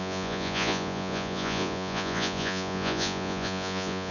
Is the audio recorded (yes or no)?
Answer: no